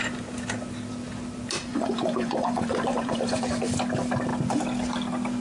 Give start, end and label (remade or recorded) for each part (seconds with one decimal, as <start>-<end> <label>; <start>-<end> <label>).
0.0-1.6 recorded; 1.6-3.7 remade; 3.7-5.4 recorded